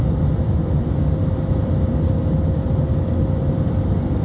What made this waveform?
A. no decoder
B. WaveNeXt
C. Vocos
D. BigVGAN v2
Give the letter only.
A